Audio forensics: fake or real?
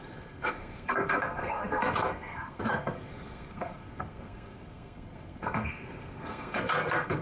fake